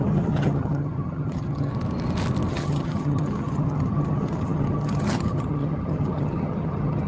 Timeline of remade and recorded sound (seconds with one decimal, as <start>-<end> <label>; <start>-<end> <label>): 0.0-1.7 remade; 1.7-2.5 recorded; 2.5-7.1 remade